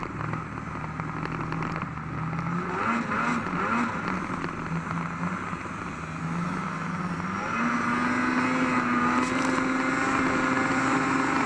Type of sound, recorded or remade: recorded